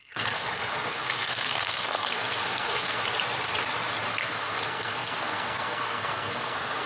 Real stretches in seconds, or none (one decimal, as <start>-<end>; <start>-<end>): 3.0-4.1